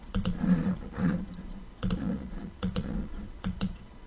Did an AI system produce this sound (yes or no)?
yes